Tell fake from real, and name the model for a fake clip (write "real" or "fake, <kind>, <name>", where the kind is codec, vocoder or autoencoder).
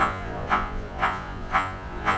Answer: fake, vocoder, Vocos